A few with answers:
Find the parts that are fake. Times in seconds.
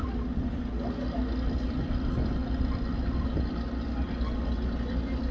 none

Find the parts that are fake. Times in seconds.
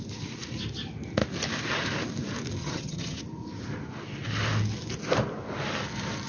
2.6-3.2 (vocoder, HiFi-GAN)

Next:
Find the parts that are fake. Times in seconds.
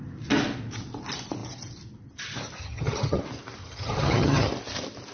2.6-3.2 (vocoder, HiFi-GAN); 3.6-4.5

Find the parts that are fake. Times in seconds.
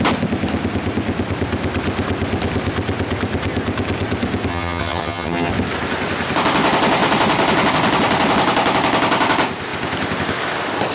4.5-5.5 (vocoder, HiFi-GAN)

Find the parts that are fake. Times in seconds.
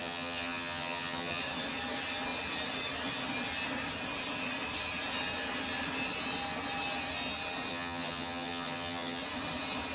0.0-1.4 (vocoder, HiFi-GAN); 7.7-9.2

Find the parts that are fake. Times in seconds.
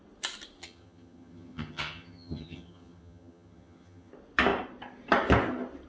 0.6-4.1 (vocoder, HiFi-GAN)